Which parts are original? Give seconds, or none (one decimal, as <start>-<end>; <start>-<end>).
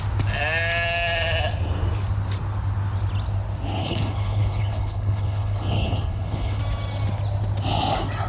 0.0-3.8; 6.6-8.3